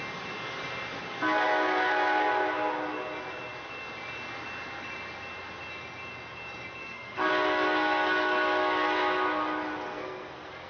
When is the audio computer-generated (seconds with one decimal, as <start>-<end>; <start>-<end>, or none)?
6.8-7.3; 9.9-10.7